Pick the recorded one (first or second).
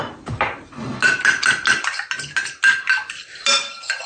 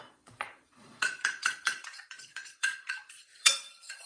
first